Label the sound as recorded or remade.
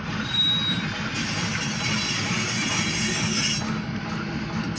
recorded